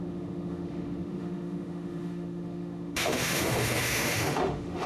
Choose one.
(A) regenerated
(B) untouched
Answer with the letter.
A